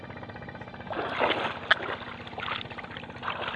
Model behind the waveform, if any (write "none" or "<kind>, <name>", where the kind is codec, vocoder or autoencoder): none